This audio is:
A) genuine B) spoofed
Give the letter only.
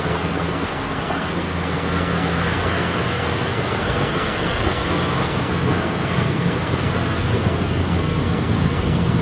B